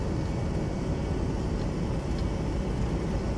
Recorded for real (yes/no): yes